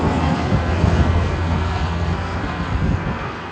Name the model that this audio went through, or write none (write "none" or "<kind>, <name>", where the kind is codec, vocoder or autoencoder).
codec, SNAC